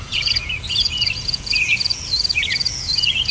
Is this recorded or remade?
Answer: remade